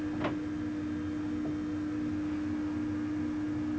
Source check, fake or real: real